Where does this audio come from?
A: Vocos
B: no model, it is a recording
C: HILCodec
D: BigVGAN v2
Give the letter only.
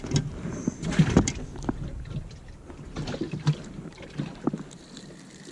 B